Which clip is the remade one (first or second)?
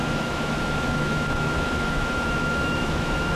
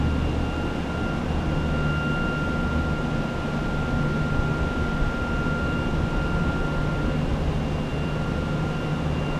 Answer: first